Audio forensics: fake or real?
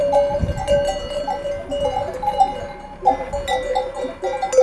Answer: real